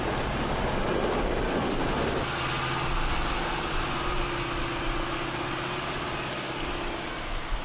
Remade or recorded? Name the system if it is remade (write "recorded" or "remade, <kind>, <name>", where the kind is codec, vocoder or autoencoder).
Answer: recorded